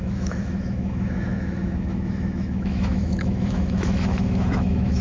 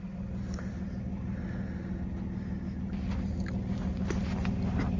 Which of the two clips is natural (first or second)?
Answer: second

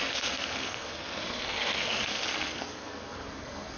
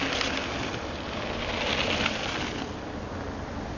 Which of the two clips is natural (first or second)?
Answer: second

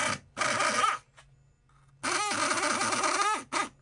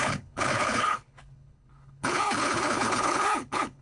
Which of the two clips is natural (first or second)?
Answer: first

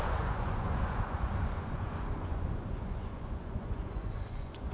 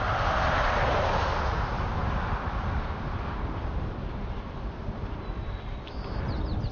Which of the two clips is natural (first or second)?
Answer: second